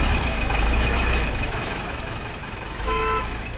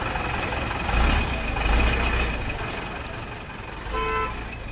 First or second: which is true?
second